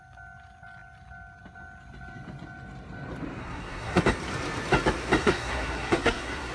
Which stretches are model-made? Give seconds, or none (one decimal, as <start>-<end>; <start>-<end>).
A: 3.4-4.0; 5.2-6.5